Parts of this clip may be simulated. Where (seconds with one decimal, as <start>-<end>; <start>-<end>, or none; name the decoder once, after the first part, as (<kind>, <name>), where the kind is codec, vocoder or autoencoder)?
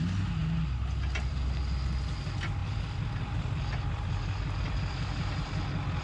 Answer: none